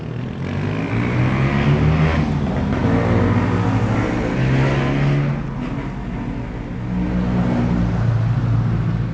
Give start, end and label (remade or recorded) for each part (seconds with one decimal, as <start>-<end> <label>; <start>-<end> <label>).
0.0-9.1 recorded